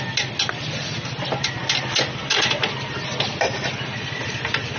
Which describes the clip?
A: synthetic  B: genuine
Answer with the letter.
B